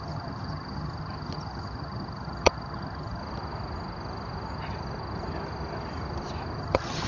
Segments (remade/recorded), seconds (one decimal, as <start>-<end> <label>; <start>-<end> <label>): 0.0-3.2 remade; 3.2-6.6 recorded; 6.6-7.1 remade